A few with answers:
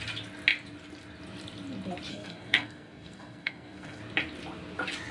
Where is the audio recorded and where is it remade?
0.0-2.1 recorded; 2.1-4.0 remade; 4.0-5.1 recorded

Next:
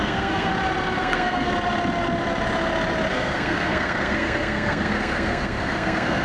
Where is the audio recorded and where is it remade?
0.0-0.5 remade; 0.5-1.0 recorded; 1.0-1.5 remade; 1.5-3.1 recorded; 3.1-6.2 remade

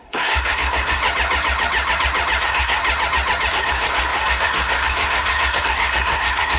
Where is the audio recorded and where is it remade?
0.0-1.0 remade; 1.0-2.4 recorded; 2.4-2.8 remade; 2.8-3.5 recorded; 3.5-6.6 remade

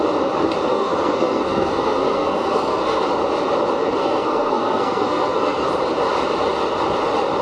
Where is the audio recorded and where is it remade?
0.0-0.7 recorded; 0.7-3.0 remade; 3.0-4.0 recorded; 4.0-5.7 remade; 5.7-7.4 recorded

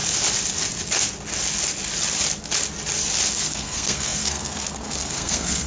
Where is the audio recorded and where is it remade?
0.0-3.4 recorded; 3.4-5.7 remade